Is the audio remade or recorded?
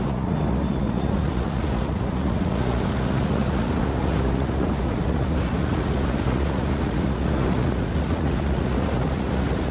remade